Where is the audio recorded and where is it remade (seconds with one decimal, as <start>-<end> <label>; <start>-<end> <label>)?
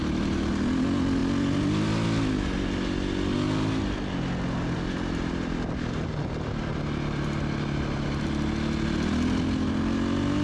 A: 0.0-10.4 recorded